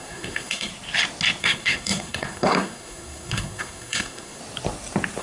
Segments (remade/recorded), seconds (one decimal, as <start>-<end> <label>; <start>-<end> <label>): 0.0-0.7 remade; 0.7-1.4 recorded; 1.4-4.4 remade; 4.4-5.2 recorded